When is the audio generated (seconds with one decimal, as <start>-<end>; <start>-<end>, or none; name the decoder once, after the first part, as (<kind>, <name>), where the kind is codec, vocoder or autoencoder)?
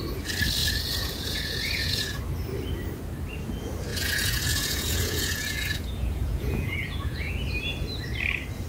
0.6-2.2 (vocoder, Vocos); 3.9-7.3